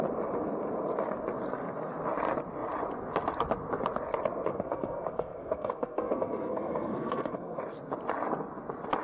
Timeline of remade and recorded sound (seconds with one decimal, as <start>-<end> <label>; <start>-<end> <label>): 0.0-4.5 recorded; 4.5-7.6 remade; 7.6-9.0 recorded